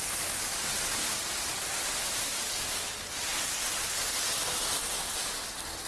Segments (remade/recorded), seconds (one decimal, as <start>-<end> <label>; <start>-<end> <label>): 0.0-0.7 recorded; 0.7-2.6 remade; 2.6-5.9 recorded